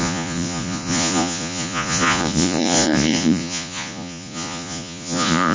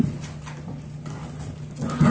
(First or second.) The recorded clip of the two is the second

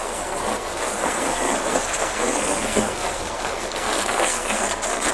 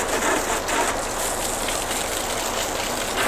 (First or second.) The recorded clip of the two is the second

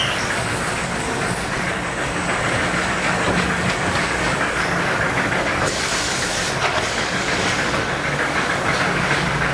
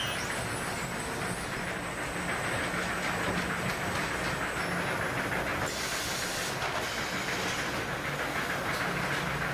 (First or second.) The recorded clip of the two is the second